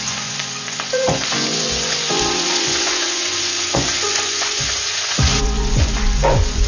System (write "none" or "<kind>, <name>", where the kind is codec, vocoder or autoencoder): vocoder, Vocos